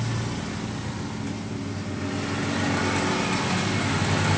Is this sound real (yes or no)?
yes